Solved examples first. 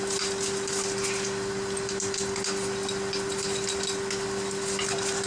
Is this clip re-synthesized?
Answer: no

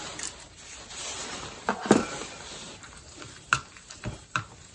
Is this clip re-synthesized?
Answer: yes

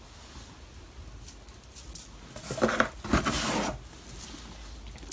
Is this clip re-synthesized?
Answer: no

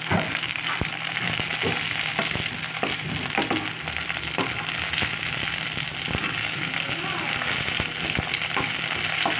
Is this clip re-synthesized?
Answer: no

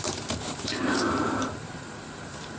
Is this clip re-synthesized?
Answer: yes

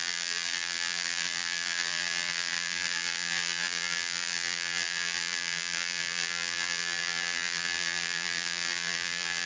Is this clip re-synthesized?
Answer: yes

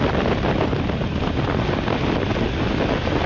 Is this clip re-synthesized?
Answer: no